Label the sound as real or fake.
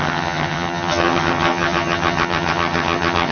fake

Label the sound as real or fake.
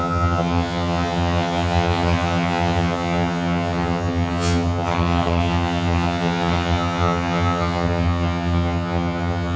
fake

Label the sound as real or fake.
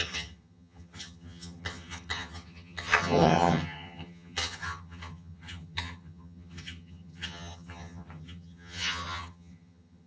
fake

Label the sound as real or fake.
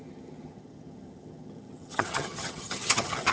fake